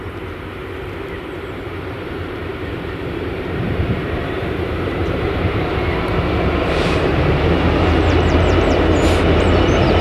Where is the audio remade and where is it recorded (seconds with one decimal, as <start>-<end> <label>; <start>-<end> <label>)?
0.0-0.6 remade; 0.6-1.2 recorded; 1.2-10.0 remade